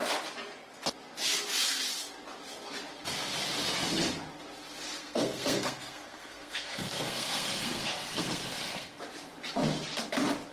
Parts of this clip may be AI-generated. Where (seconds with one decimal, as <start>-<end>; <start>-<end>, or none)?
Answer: 5.0-9.0